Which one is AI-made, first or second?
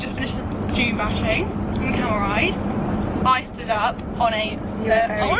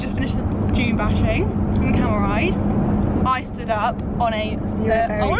first